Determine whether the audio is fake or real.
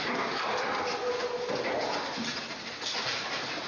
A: real